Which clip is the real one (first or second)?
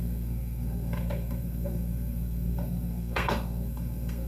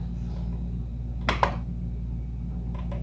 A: second